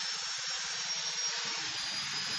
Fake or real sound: real